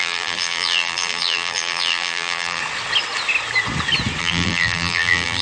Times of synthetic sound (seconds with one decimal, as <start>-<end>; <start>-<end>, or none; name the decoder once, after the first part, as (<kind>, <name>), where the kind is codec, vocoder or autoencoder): 0.0-2.6 (vocoder, BigVGAN v2); 4.2-5.4

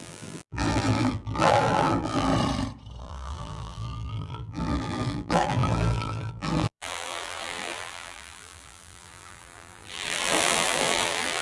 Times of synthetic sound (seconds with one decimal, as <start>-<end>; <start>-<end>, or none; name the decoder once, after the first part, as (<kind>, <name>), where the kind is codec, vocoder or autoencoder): 0.0-2.3 (vocoder, BigVGAN v2); 3.0-11.4

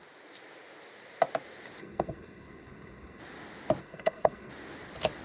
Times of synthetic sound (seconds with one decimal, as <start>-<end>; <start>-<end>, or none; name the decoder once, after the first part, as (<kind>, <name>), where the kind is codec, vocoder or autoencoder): 1.8-3.2 (codec, SNAC); 3.8-4.5

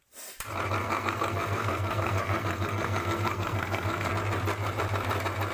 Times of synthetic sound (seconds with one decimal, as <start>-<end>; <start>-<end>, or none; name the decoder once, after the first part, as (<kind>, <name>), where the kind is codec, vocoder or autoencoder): 0.8-4.1 (codec, SNAC)

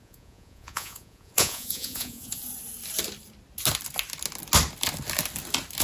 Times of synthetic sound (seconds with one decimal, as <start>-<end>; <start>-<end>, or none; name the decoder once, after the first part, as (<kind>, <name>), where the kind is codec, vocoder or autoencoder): 0.0-2.4 (vocoder, Vocos)